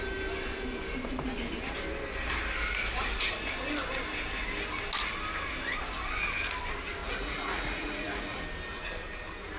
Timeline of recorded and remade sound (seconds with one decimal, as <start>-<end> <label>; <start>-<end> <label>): 0.0-7.0 recorded; 7.0-8.4 remade; 8.4-9.6 recorded